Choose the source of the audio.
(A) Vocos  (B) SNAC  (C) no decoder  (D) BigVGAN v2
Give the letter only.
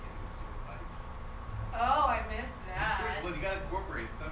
C